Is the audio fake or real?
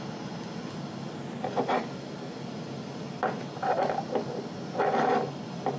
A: real